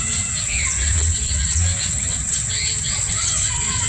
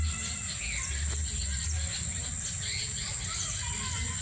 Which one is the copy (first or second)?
first